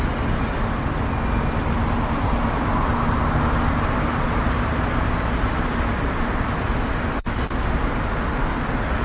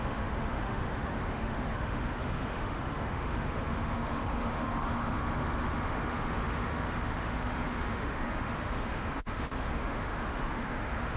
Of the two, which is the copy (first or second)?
second